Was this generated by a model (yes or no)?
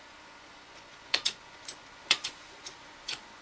yes